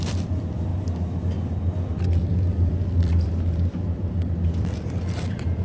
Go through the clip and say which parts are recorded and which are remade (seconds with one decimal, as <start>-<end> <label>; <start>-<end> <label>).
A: 0.0-0.7 remade; 0.7-1.9 recorded; 1.9-5.6 remade